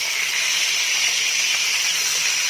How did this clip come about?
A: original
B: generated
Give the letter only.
A